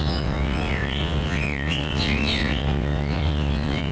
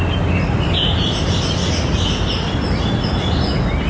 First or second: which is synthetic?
first